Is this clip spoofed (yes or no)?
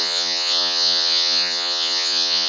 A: yes